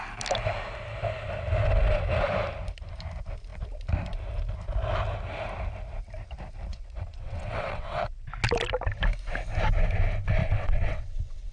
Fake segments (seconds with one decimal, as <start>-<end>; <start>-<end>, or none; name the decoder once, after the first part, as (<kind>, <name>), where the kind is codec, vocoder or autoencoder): 6.7-8.3 (vocoder, WaveNeXt); 10.4-11.5